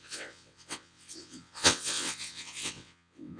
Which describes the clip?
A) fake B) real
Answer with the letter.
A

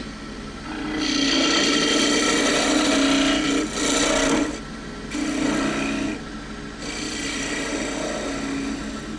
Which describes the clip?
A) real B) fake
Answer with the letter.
A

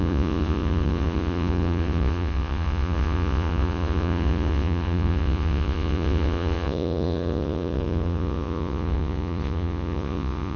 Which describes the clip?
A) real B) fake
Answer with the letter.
B